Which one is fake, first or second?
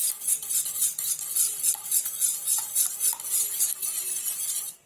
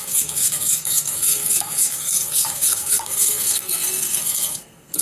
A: second